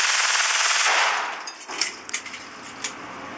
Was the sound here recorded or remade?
recorded